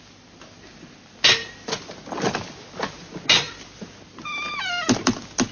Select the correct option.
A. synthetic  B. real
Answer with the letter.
B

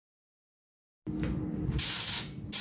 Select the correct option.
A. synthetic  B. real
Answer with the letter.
B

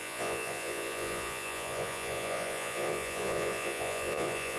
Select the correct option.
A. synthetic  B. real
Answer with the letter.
A